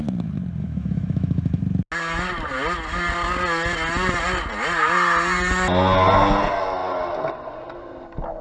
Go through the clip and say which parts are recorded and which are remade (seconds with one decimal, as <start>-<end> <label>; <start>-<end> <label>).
0.0-0.6 recorded; 0.6-1.6 remade; 1.6-8.4 recorded